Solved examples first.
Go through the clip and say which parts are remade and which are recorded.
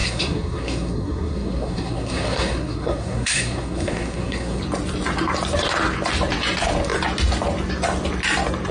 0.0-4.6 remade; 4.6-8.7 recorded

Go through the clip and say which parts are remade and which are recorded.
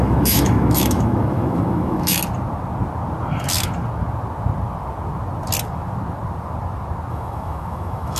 0.0-2.2 remade; 2.2-7.1 recorded; 7.1-8.2 remade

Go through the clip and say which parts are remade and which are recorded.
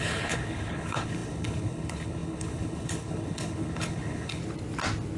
0.0-4.4 remade; 4.4-5.2 recorded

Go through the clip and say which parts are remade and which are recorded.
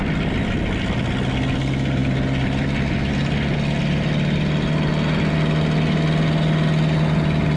0.0-7.6 recorded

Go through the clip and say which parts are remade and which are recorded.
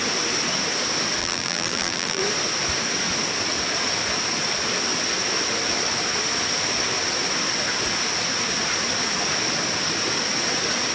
0.0-1.2 recorded; 1.2-2.2 remade; 2.2-10.9 recorded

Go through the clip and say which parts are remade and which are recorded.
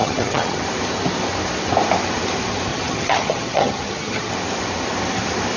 0.0-0.6 remade; 0.6-2.7 recorded; 2.7-4.3 remade; 4.3-5.6 recorded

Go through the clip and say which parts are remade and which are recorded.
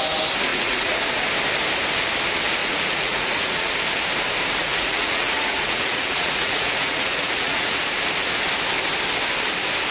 0.0-0.5 recorded; 0.5-1.0 remade; 1.0-2.6 recorded; 2.6-3.7 remade; 3.7-4.6 recorded; 4.6-7.8 remade; 7.8-9.9 recorded